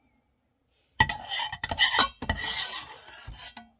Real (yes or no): yes